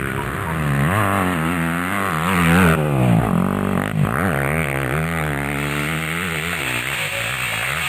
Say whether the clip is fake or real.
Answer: real